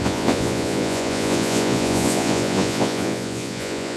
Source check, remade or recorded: remade